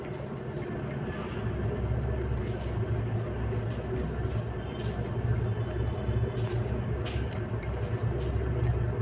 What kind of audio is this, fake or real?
real